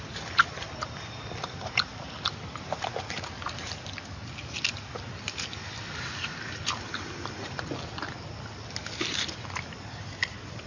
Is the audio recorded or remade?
recorded